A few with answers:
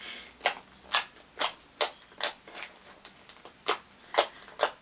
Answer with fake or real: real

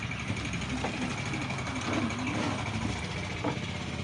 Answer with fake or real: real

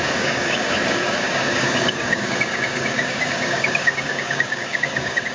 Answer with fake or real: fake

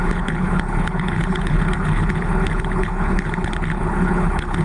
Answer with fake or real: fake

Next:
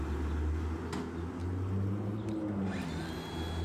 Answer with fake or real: real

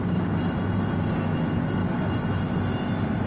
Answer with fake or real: real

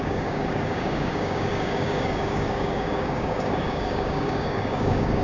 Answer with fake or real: fake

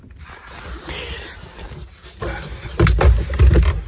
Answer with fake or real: real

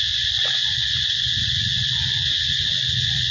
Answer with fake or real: fake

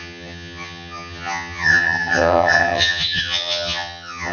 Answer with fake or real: fake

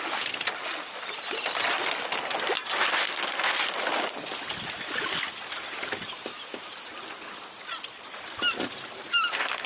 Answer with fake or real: real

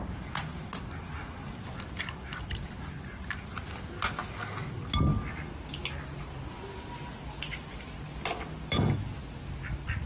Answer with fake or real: real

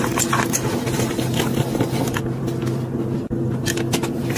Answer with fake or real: real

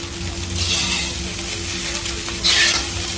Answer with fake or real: real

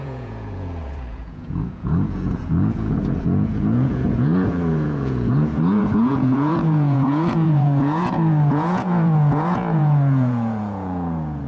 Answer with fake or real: fake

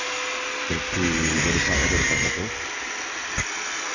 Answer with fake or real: real